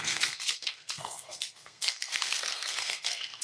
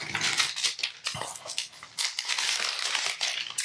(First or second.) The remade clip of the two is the first